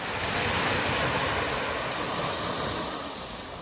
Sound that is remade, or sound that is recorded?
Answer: recorded